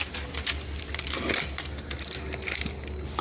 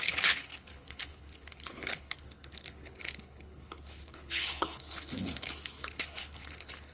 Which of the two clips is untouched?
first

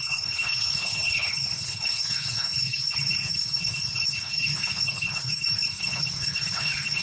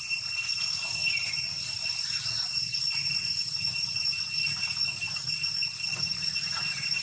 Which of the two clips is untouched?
second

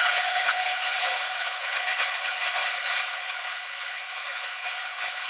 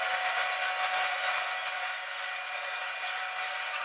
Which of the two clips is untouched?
second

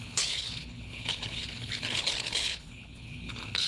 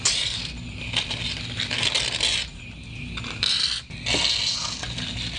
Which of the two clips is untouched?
second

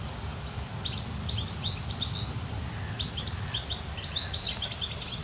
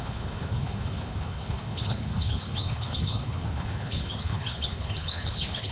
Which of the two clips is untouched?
first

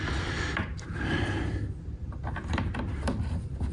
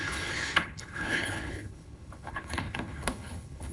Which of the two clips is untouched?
first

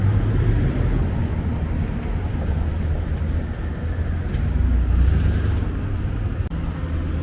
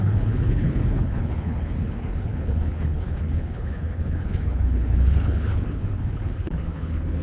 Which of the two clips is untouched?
first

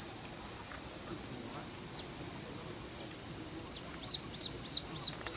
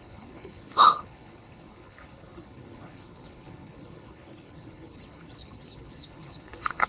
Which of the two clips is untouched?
first